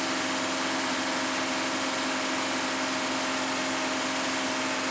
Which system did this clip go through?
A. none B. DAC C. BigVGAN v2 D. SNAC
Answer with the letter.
A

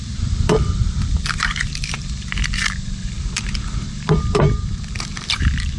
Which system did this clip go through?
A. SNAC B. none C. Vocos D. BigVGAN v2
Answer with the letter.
D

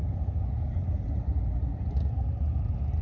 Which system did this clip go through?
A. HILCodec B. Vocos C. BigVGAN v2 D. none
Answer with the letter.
D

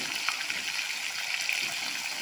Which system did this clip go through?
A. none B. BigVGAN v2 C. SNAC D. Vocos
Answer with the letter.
A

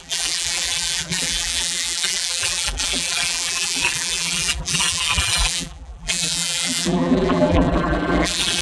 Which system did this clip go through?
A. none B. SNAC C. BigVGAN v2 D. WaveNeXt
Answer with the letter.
C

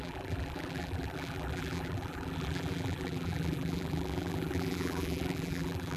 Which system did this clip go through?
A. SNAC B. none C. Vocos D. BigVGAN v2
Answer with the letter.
D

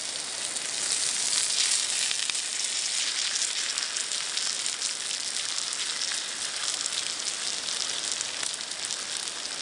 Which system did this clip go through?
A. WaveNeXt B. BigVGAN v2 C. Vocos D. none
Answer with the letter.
D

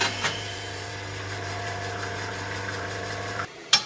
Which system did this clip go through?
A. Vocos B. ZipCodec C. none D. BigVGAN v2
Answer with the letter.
D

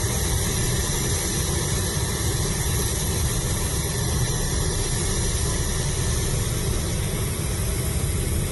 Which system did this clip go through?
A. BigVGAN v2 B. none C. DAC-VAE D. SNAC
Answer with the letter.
B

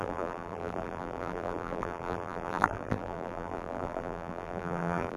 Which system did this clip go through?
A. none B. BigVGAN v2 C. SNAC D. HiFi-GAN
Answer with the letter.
B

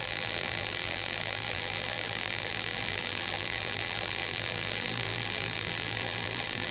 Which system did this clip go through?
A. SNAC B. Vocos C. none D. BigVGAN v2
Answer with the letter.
D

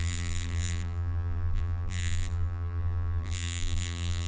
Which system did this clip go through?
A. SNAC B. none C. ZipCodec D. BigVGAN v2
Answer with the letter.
D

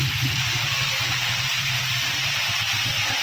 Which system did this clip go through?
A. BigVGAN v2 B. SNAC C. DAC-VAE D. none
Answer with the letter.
A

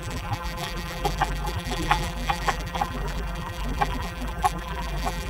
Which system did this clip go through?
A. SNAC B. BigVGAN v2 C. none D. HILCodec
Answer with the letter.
B